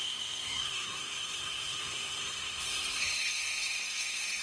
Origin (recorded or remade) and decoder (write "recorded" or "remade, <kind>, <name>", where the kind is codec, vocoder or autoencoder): remade, codec, SNAC